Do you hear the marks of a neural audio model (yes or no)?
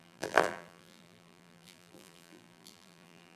yes